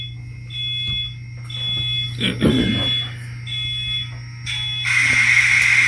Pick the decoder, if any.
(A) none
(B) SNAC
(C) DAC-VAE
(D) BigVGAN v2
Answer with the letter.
A